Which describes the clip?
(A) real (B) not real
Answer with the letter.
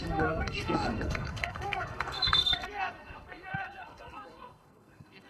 B